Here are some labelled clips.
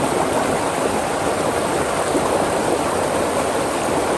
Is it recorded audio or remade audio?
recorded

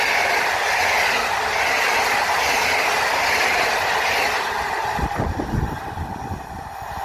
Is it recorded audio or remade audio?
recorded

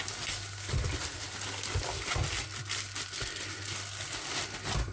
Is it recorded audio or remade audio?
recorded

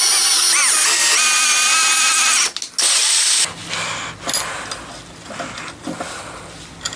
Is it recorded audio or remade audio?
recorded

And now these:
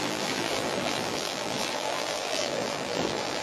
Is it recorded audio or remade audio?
remade